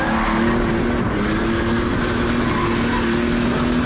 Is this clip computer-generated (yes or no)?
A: no